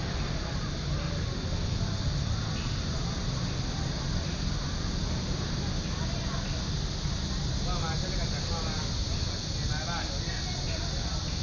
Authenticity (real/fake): real